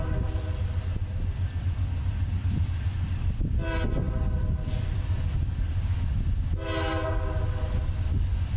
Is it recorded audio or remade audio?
recorded